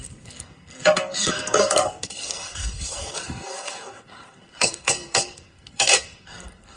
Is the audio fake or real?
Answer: fake